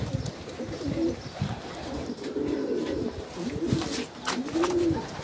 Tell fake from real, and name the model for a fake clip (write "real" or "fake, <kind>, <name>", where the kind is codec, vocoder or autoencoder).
fake, vocoder, BigVGAN v2